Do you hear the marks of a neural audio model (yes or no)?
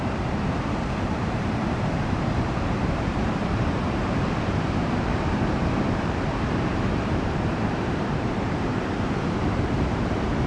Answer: yes